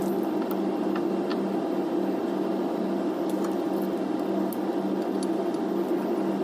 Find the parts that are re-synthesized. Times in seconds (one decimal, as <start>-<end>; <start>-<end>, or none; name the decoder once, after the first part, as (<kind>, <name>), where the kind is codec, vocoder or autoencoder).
none